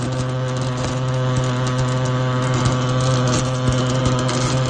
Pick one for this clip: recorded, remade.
recorded